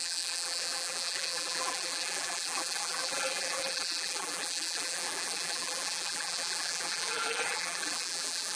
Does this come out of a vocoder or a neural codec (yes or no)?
yes